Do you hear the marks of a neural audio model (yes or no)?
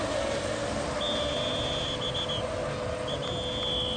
no